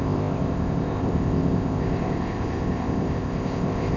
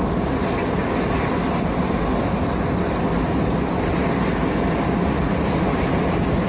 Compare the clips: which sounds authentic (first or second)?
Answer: second